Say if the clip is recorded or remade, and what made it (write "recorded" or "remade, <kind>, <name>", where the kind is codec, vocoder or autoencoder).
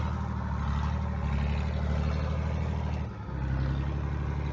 recorded